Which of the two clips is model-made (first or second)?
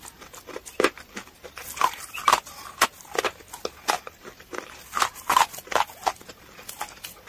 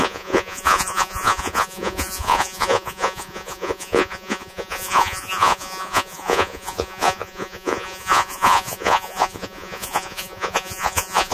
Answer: second